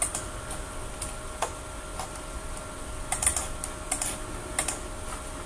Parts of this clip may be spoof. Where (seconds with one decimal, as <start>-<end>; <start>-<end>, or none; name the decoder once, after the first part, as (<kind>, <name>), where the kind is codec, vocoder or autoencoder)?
1.9-2.6 (vocoder, BigVGAN v2)